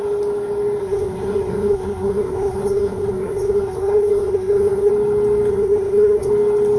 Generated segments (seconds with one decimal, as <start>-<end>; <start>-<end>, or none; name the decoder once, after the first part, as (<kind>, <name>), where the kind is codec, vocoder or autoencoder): 0.8-4.9 (codec, SNAC); 5.5-6.3